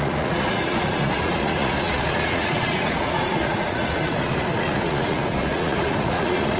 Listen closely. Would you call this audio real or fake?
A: fake